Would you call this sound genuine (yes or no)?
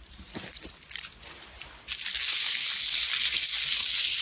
yes